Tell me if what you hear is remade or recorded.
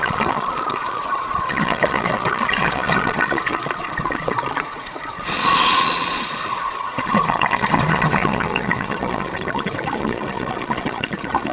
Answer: remade